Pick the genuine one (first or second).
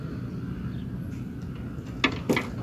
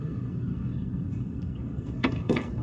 first